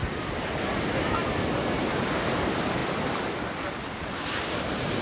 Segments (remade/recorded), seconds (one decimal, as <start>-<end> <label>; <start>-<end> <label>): 0.0-1.6 recorded; 1.6-5.0 remade